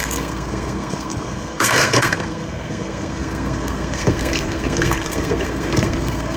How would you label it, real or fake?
fake